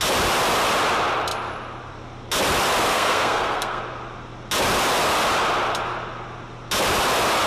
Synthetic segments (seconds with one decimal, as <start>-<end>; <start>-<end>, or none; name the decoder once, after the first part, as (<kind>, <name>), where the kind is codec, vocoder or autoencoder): 2.9-3.8 (codec, SNAC)